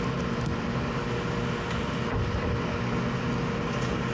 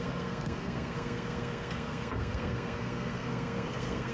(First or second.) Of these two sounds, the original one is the first